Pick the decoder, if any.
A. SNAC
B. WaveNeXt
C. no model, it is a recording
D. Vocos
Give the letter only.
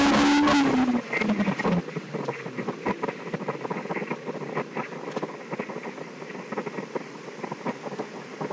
C